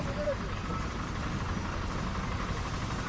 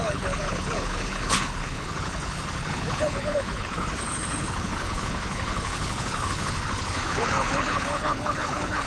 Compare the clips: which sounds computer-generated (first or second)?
second